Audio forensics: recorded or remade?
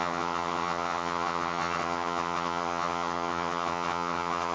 remade